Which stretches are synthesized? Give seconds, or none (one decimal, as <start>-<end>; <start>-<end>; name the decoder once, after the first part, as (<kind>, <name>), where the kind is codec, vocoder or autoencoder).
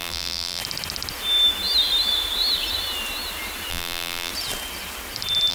0.0-0.6 (vocoder, BigVGAN v2); 3.7-4.3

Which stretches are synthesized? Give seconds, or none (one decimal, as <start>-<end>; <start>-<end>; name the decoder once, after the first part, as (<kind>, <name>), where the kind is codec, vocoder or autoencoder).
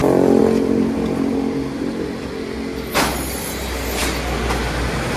none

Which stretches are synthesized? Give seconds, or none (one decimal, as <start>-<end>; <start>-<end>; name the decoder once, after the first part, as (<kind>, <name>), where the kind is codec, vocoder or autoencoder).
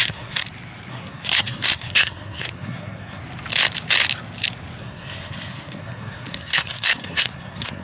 0.0-0.4 (codec, SNAC); 0.9-3.2; 4.8-7.8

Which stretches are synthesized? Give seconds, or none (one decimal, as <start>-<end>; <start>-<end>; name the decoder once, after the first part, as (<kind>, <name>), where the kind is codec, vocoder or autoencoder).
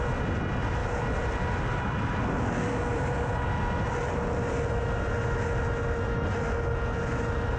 2.9-3.6 (vocoder, BigVGAN v2)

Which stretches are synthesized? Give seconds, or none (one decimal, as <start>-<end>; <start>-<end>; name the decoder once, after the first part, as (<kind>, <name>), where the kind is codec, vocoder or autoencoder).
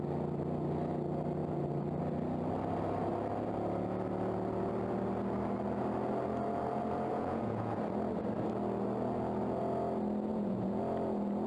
7.1-7.8 (vocoder, Vocos); 10.3-10.8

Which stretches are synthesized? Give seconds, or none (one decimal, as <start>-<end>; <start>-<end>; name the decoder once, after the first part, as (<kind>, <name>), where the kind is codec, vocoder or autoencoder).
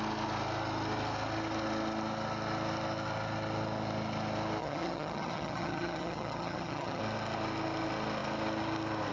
4.6-7.0 (vocoder, HiFi-GAN)